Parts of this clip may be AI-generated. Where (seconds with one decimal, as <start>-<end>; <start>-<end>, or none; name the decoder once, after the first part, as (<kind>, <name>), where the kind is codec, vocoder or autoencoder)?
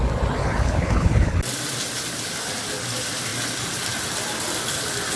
0.4-1.4 (codec, HILCodec)